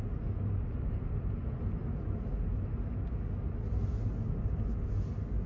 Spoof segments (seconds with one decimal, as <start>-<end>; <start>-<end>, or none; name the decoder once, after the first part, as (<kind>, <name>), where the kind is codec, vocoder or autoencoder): none